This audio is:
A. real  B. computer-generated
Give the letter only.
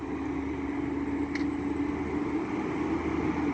A